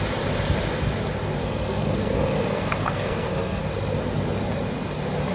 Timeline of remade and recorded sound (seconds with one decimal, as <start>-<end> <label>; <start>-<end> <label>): 0.0-1.4 recorded; 1.4-3.6 remade; 3.6-5.3 recorded